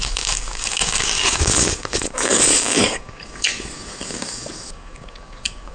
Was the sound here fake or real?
fake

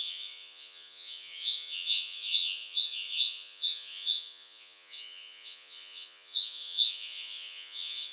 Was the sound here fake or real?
fake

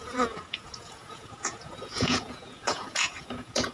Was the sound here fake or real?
fake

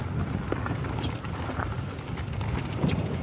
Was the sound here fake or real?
real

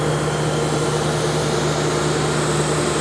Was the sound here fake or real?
real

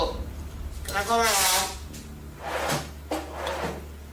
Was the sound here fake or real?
real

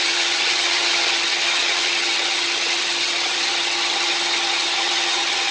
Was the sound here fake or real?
fake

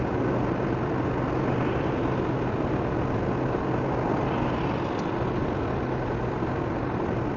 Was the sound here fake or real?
real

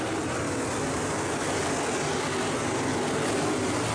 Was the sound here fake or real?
real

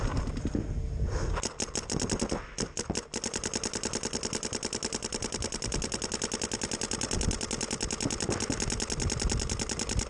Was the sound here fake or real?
real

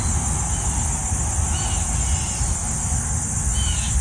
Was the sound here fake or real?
real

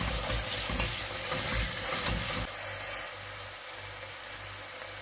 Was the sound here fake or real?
real